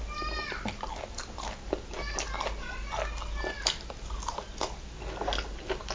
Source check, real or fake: real